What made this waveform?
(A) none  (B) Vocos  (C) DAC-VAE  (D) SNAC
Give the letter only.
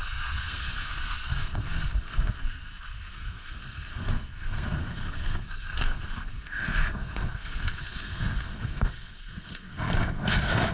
D